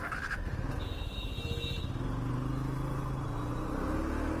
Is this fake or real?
real